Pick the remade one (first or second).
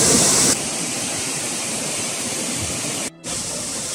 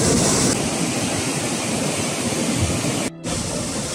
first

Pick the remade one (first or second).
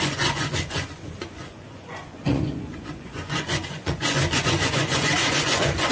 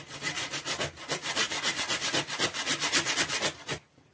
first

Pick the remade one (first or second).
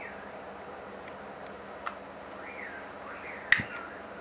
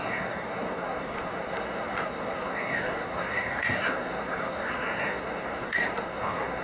second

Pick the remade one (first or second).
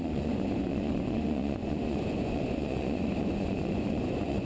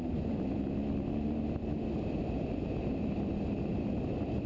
first